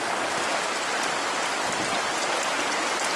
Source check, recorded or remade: remade